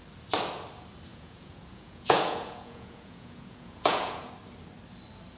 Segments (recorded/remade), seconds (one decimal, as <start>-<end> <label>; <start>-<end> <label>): 0.0-1.1 recorded; 1.1-4.3 remade; 4.3-5.4 recorded